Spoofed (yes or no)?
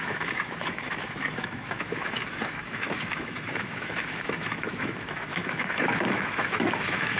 yes